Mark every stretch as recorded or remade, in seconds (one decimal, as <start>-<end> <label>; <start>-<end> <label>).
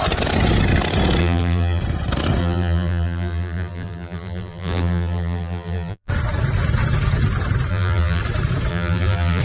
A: 0.0-1.2 recorded; 1.2-1.8 remade; 1.8-2.4 recorded; 2.4-6.1 remade; 6.1-7.7 recorded; 7.7-8.2 remade; 8.2-8.7 recorded; 8.7-9.4 remade